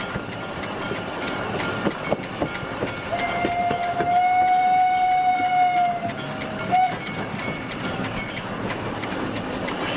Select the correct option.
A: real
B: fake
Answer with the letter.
A